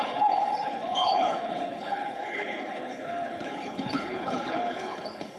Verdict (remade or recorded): remade